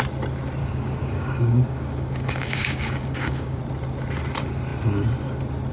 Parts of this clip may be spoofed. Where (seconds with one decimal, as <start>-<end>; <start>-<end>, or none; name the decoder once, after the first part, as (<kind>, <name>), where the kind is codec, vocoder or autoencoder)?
0.6-3.6 (codec, DAC)